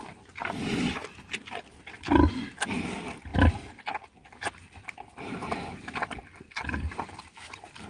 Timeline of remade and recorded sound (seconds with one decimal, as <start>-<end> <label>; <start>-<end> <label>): 0.0-7.9 recorded